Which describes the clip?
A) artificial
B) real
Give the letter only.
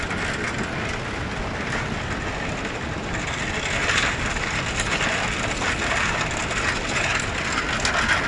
B